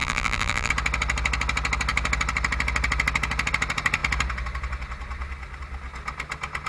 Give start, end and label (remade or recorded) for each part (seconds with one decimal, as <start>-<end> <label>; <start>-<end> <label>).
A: 0.0-0.7 remade; 0.7-6.7 recorded